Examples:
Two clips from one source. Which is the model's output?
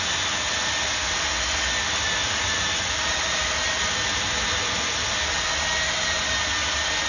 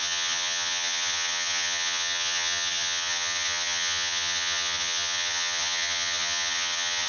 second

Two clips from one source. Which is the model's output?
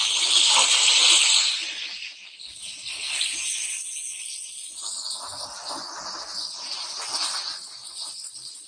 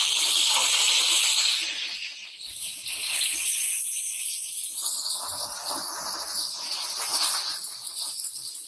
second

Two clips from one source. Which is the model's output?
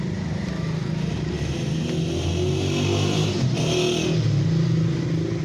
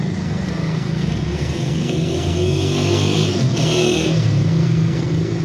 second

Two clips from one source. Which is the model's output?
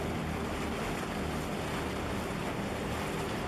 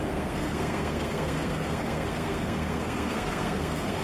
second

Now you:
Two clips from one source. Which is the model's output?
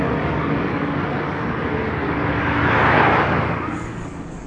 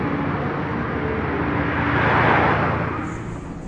first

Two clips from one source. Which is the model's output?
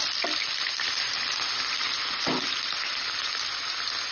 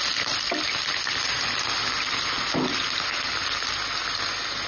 first